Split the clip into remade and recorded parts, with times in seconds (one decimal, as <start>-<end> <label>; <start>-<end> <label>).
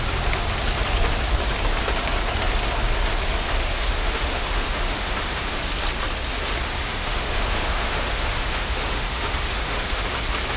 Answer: 0.0-3.6 recorded; 3.6-5.5 remade; 5.5-6.7 recorded; 6.7-10.2 remade; 10.2-10.6 recorded